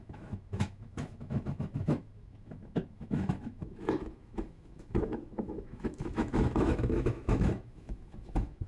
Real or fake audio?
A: fake